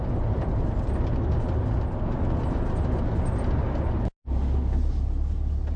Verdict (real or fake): real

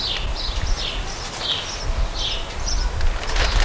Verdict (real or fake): real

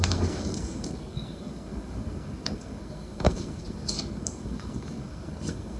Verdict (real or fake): fake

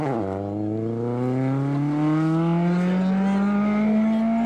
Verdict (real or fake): real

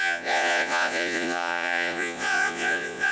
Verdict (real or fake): fake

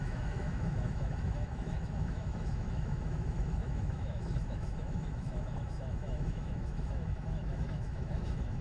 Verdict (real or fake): fake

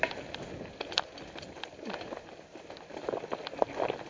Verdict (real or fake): real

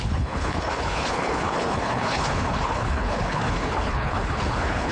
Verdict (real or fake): fake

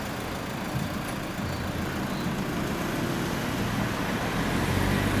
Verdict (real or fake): real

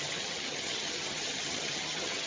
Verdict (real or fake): fake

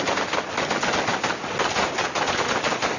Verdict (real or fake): real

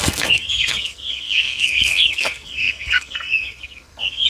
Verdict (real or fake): fake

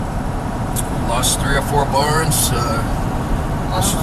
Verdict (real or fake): fake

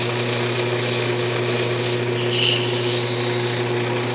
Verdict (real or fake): real